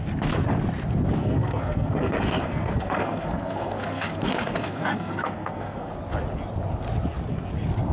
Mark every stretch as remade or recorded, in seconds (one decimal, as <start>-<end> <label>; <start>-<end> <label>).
0.0-1.2 recorded; 1.2-5.9 remade; 5.9-7.9 recorded